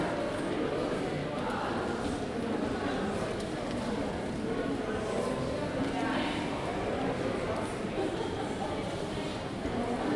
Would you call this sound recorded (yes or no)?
yes